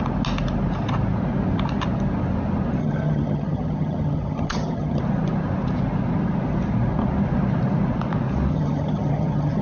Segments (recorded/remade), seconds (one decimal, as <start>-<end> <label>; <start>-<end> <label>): 0.0-2.8 recorded; 2.8-5.0 remade; 5.0-8.5 recorded; 8.5-9.6 remade